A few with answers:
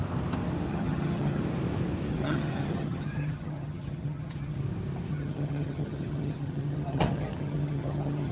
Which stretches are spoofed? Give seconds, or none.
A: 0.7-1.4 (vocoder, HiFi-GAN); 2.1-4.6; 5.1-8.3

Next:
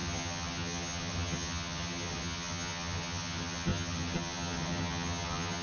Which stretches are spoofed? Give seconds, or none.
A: 0.0-5.6 (vocoder, HiFi-GAN)